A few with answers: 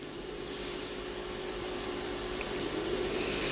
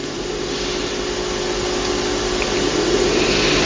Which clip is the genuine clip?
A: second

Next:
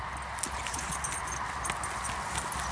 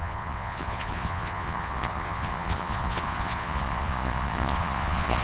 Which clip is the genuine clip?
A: first